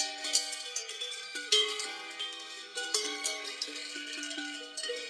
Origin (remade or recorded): remade